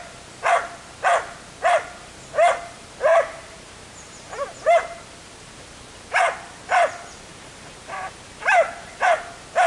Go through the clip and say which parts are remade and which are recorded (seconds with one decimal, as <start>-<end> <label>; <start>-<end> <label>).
0.0-3.1 recorded; 3.1-5.0 remade; 5.0-7.3 recorded; 7.3-9.1 remade; 9.1-9.7 recorded